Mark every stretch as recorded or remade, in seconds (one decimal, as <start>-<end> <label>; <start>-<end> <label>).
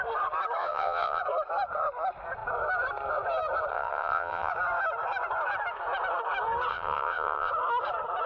0.0-0.6 recorded; 0.6-1.2 remade; 1.2-3.7 recorded; 3.7-4.5 remade; 4.5-6.7 recorded; 6.7-7.5 remade; 7.5-8.3 recorded